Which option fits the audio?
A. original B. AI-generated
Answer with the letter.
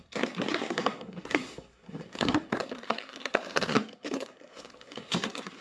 B